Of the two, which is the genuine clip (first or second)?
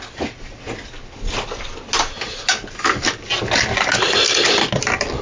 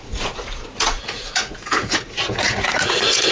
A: first